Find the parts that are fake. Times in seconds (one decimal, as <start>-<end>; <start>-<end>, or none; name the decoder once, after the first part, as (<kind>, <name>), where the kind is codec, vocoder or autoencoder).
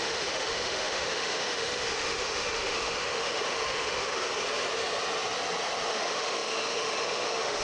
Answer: 0.0-4.2 (autoencoder, DAC-VAE); 5.9-7.6